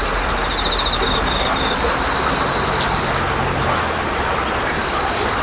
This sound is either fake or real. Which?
real